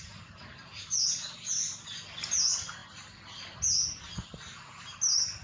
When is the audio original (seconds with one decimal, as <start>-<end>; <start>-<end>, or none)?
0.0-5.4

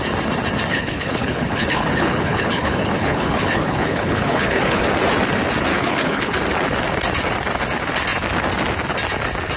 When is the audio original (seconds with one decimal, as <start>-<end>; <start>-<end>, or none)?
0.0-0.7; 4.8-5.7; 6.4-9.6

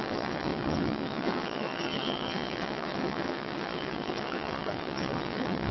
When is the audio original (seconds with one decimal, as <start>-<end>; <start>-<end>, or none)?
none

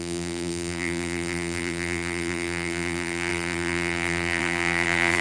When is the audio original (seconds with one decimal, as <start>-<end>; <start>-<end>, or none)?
none

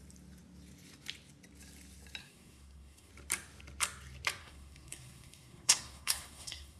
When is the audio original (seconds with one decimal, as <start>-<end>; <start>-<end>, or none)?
0.0-2.2; 3.1-4.4